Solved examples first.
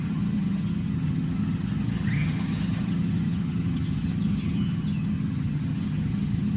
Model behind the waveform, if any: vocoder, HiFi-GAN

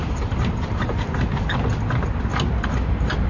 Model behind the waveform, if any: none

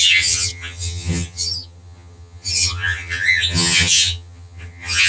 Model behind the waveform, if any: vocoder, HiFi-GAN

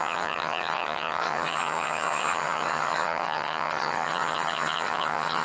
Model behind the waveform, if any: vocoder, HiFi-GAN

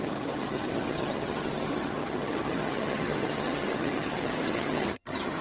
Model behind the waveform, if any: vocoder, HiFi-GAN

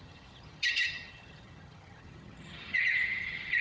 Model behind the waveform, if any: vocoder, HiFi-GAN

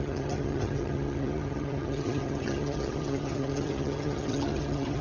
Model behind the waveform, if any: vocoder, HiFi-GAN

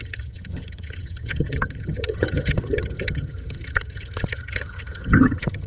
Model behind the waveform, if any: vocoder, HiFi-GAN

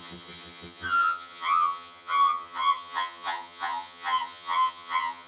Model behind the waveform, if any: vocoder, HiFi-GAN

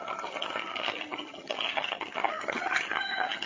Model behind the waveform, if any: vocoder, HiFi-GAN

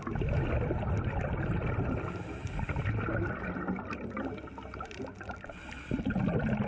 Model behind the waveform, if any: none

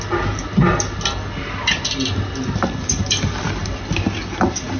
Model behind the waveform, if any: none